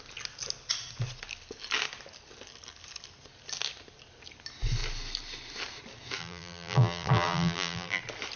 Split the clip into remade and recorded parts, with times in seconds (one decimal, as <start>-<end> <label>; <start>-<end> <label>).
0.0-6.2 recorded; 6.2-8.0 remade; 8.0-8.4 recorded